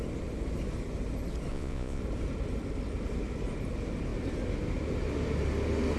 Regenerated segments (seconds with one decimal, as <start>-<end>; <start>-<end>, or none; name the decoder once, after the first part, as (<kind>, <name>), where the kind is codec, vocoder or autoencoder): 1.5-2.0 (vocoder, Vocos)